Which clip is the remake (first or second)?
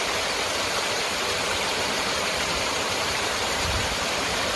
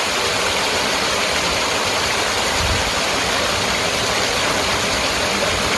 first